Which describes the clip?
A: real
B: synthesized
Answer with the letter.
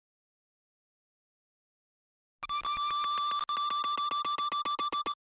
A